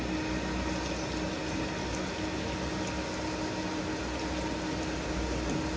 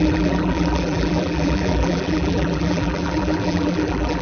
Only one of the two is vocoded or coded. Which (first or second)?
second